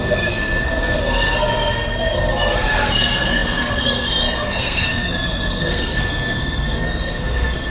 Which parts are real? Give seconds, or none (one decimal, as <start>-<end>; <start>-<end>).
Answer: none